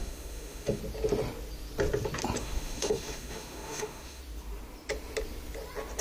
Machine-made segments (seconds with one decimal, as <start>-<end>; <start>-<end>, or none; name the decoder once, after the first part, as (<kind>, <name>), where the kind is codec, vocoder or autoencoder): 0.0-0.8 (autoencoder, DAC-VAE); 2.4-4.2